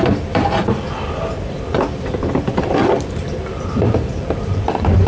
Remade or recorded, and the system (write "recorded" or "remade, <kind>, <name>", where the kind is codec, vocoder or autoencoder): remade, vocoder, BigVGAN v2